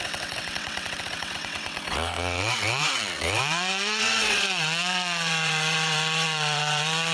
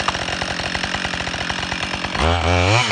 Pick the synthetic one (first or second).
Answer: first